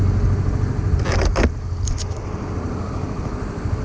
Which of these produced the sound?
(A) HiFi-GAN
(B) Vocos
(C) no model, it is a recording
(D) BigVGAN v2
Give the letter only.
C